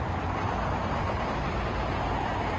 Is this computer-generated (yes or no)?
no